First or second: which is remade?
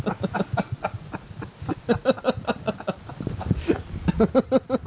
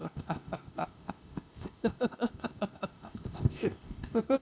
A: second